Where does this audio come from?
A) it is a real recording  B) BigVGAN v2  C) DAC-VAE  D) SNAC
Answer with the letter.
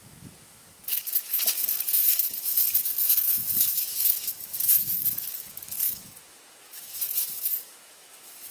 C